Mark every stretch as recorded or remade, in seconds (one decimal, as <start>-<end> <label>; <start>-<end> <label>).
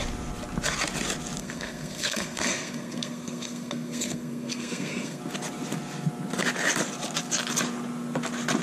0.0-1.4 recorded; 1.4-5.2 remade; 5.2-8.6 recorded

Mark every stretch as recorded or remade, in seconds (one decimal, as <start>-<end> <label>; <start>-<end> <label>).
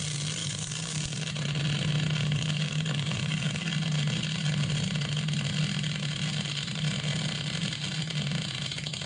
0.0-0.4 recorded; 0.4-1.3 remade; 1.3-2.2 recorded; 2.2-3.7 remade; 3.7-9.1 recorded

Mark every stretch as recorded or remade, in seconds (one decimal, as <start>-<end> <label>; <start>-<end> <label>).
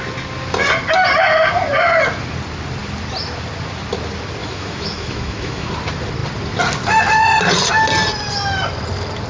0.0-4.4 recorded; 4.4-5.7 remade; 5.7-9.3 recorded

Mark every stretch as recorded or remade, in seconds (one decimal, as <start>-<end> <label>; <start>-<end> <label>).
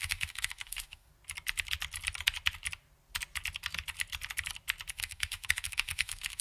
0.0-1.1 remade; 1.1-4.9 recorded; 4.9-6.4 remade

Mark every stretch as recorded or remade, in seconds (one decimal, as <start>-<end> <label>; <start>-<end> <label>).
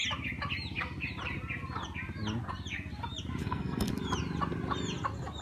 0.0-3.4 recorded; 3.4-3.9 remade; 3.9-5.4 recorded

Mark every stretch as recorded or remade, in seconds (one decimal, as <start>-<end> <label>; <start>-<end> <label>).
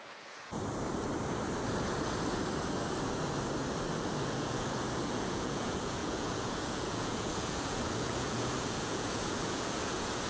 0.0-0.5 remade; 0.5-4.2 recorded; 4.2-10.3 remade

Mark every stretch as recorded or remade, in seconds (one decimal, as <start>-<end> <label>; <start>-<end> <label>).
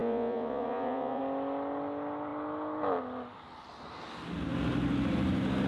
0.0-1.2 remade; 1.2-5.7 recorded